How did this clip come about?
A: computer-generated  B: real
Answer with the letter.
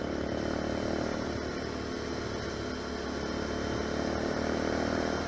B